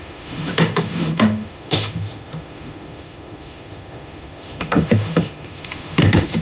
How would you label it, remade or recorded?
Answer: remade